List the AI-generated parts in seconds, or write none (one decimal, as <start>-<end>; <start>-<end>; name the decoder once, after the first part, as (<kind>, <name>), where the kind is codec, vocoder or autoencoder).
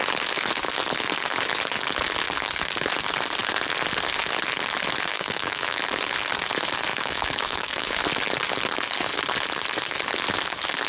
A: 5.1-5.8 (autoencoder, DAC-VAE); 6.9-8.0